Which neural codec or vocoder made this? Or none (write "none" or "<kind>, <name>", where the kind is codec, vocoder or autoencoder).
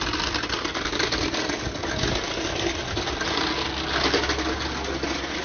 none